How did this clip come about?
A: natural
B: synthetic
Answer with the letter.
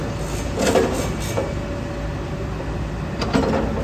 A